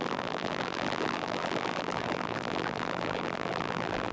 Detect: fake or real fake